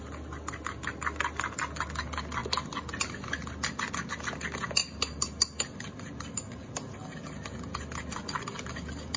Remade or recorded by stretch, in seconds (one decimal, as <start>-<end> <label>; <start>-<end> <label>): 0.0-9.2 recorded